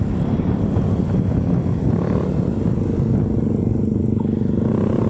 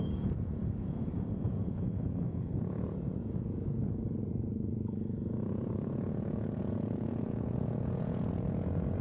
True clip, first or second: first